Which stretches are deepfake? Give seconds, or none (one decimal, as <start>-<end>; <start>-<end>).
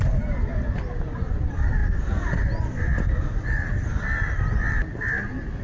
none